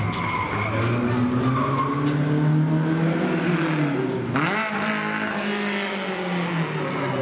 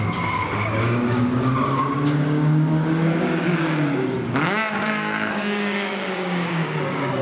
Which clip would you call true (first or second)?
first